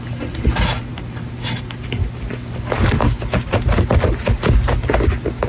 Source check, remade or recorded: recorded